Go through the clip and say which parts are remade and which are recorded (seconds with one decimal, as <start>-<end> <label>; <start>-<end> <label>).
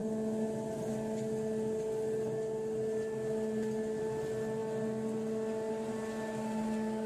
0.0-7.1 recorded